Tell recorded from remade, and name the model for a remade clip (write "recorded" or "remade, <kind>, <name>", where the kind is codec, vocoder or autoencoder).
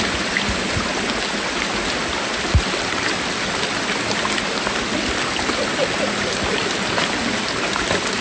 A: recorded